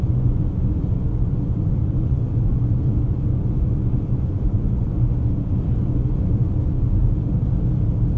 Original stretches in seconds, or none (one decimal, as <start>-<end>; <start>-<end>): 7.0-8.2